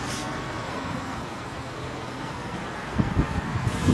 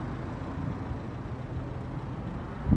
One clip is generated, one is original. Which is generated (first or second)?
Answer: first